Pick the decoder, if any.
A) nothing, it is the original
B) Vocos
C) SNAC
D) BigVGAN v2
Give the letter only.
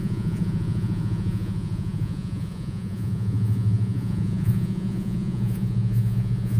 B